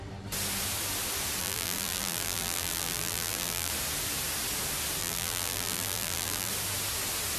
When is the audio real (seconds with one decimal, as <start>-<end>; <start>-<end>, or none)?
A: 0.0-1.4; 3.7-5.0; 6.5-7.4